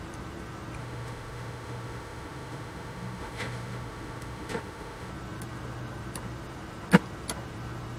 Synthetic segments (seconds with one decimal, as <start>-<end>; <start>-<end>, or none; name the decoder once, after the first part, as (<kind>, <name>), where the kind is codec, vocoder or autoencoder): 0.8-5.1 (autoencoder, DAC-VAE)